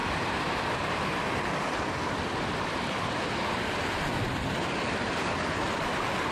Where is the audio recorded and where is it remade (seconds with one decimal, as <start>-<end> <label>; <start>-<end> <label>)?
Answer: 0.0-6.3 recorded